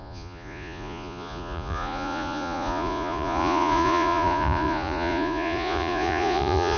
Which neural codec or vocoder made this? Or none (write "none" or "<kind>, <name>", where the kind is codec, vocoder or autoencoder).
vocoder, Vocos